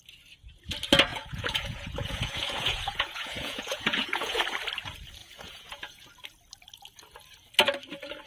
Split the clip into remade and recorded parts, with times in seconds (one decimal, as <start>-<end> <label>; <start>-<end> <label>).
0.0-1.1 recorded; 1.1-4.4 remade; 4.4-5.2 recorded; 5.2-6.1 remade; 6.1-8.3 recorded